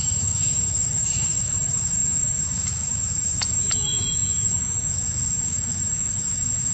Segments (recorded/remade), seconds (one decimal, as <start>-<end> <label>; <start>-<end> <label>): 0.0-6.7 remade